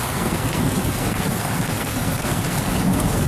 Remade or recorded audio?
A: remade